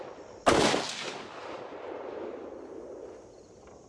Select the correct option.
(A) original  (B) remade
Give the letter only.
A